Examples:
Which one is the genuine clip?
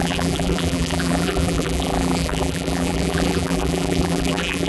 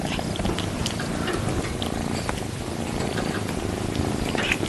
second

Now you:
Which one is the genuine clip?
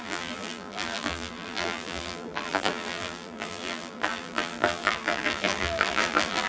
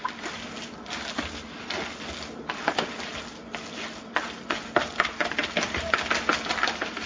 second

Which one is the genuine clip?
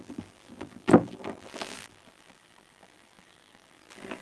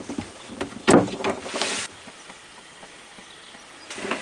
second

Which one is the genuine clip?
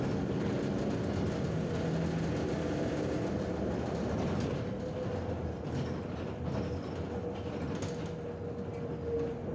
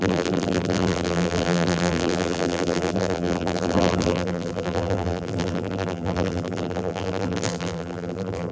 first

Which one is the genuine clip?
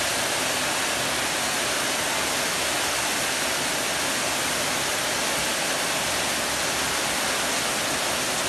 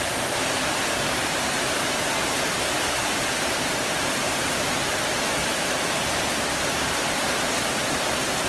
first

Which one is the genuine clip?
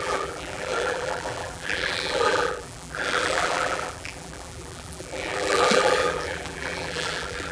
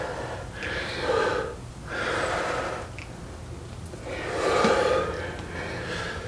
second